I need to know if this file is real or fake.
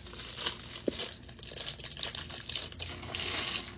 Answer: real